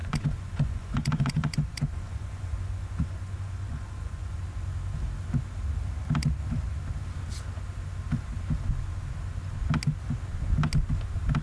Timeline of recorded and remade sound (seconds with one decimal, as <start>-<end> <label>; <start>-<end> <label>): 0.0-4.4 remade; 4.4-11.4 recorded